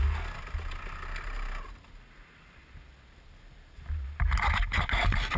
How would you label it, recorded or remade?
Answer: recorded